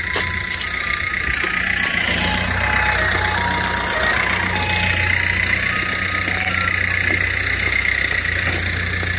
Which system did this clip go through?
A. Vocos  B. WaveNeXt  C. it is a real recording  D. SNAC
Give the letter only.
C